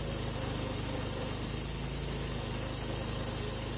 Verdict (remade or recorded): recorded